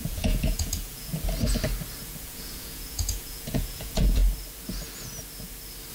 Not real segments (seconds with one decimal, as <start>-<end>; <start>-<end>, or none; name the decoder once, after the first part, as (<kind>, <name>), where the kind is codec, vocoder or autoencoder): 0.0-1.1 (vocoder, Vocos); 2.2-4.2